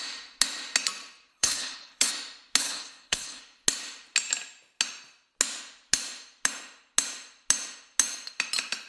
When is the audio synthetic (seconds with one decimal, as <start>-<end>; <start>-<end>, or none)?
1.3-2.1; 2.6-3.4